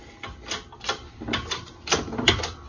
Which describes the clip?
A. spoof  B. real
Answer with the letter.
B